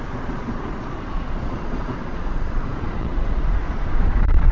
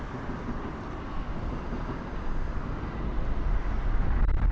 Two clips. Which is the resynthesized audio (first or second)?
first